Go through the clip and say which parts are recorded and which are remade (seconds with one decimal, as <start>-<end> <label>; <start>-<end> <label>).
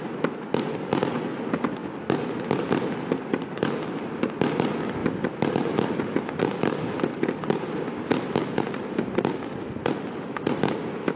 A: 0.0-11.2 recorded